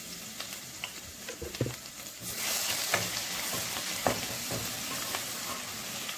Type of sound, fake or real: real